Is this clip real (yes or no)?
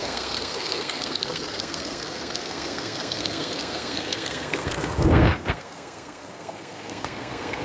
no